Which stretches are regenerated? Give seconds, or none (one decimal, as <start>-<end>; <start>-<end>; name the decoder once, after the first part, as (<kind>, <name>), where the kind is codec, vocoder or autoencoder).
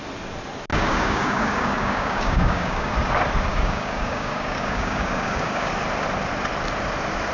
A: 0.7-2.9 (codec, DAC); 3.5-5.7